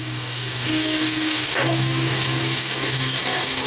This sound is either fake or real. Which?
fake